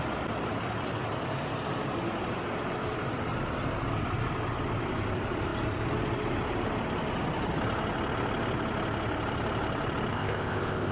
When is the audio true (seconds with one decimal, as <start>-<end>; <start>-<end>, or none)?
0.0-10.1

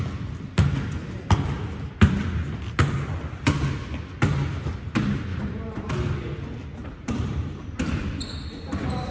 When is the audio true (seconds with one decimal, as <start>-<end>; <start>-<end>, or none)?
0.0-5.3; 5.9-6.8; 8.1-9.1

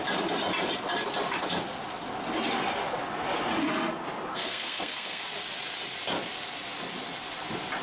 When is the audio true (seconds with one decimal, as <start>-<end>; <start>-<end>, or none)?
0.0-4.3; 5.2-7.8

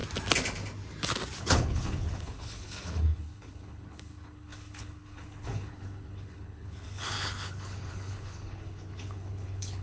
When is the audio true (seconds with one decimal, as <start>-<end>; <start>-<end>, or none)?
0.0-1.4

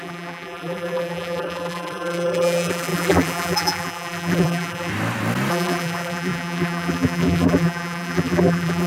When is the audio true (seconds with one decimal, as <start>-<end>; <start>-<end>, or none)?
4.9-5.5